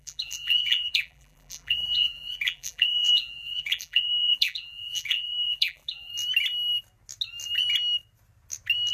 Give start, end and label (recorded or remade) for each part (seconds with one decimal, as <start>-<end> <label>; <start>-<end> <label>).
0.0-6.1 remade; 6.1-8.9 recorded

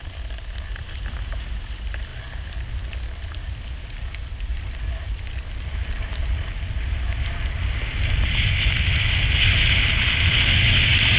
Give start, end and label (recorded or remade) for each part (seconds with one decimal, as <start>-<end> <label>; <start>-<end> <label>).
0.0-11.2 recorded

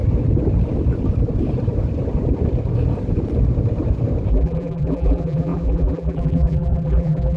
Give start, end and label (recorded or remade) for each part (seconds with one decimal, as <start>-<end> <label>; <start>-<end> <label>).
0.0-4.3 recorded; 4.3-7.4 remade

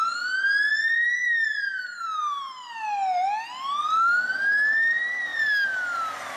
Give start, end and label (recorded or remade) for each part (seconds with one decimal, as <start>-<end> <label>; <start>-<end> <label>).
0.0-1.2 recorded; 1.2-2.7 remade; 2.7-6.4 recorded

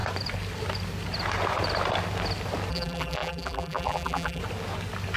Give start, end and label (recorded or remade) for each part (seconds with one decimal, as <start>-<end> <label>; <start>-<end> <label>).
0.0-2.7 recorded; 2.7-4.4 remade; 4.4-5.2 recorded

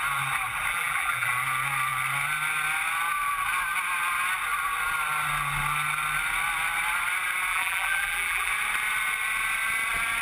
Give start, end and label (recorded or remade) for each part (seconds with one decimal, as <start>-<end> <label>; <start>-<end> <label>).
0.0-0.7 recorded; 0.7-1.3 remade; 1.3-7.5 recorded; 7.5-8.5 remade; 8.5-10.2 recorded